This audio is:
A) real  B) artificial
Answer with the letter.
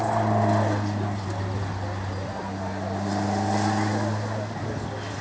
A